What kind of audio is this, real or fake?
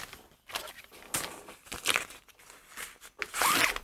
real